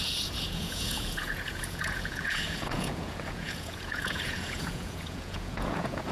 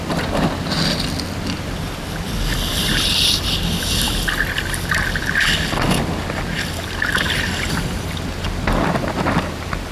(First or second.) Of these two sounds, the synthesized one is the first